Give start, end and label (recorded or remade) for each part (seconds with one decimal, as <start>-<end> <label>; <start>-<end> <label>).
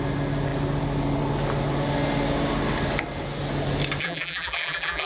0.0-4.0 recorded; 4.0-5.1 remade